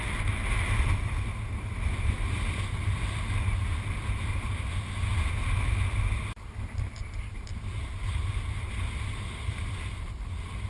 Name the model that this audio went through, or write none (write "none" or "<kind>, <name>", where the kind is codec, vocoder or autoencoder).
none